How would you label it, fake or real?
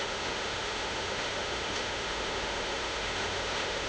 fake